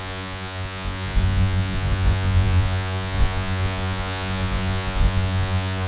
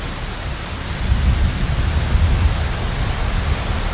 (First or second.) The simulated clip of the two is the first